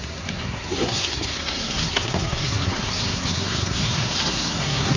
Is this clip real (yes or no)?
no